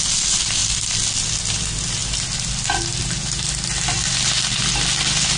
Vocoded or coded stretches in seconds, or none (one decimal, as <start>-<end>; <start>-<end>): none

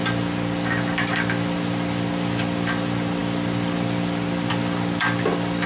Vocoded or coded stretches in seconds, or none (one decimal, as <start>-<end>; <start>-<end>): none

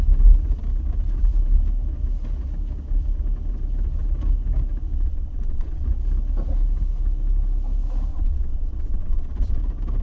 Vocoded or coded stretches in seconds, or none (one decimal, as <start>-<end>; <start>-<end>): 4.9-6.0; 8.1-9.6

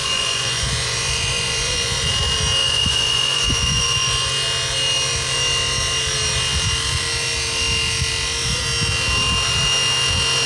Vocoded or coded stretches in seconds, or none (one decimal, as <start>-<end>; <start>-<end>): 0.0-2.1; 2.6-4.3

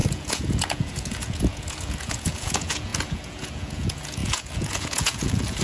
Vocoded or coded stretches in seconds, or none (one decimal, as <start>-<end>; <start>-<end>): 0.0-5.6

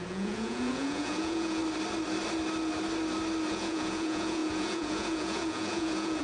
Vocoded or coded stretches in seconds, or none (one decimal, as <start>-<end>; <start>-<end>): 0.0-1.6; 3.5-6.2